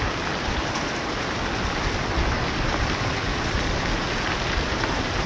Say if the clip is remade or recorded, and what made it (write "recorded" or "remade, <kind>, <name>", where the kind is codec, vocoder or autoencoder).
recorded